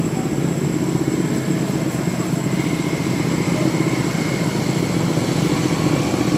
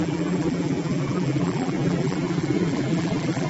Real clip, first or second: first